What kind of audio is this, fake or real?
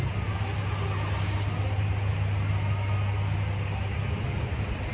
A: real